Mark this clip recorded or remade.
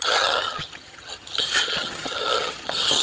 remade